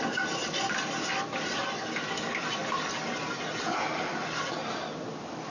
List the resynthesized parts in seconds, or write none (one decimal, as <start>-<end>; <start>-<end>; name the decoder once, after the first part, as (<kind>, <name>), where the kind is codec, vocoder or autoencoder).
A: none